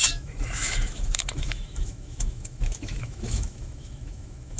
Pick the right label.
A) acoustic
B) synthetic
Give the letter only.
B